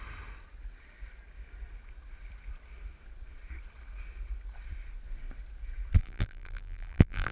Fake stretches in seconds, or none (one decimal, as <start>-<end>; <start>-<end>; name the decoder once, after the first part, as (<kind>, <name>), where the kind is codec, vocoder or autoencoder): 6.0-7.3 (vocoder, BigVGAN v2)